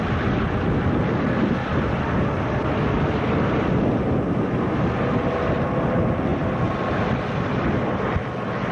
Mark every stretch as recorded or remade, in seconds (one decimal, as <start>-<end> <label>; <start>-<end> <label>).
0.0-8.7 recorded